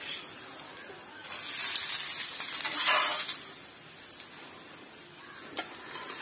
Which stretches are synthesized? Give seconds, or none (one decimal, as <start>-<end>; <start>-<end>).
none